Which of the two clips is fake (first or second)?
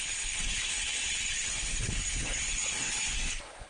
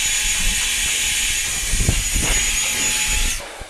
first